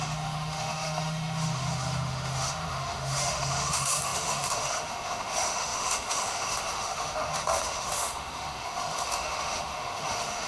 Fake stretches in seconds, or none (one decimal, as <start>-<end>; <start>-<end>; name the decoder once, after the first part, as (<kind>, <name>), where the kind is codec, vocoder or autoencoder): 0.0-10.5 (autoencoder, DAC-VAE)